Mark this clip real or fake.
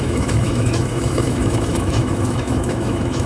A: fake